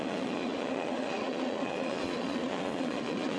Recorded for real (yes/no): no